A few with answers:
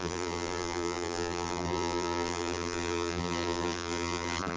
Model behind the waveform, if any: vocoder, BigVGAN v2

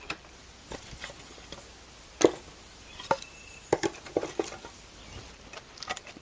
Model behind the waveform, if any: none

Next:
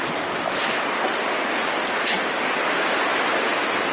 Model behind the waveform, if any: none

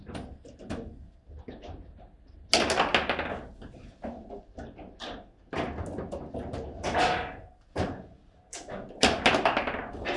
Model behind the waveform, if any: none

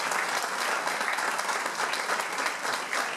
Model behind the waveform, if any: none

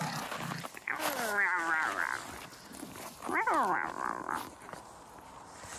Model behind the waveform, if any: none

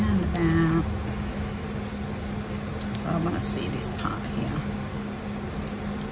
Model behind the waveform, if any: none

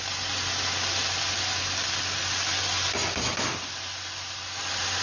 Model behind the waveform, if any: none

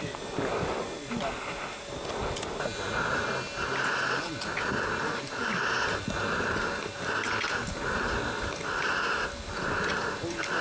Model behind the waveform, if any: none